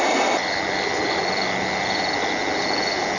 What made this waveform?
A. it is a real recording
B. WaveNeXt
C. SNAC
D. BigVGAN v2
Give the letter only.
A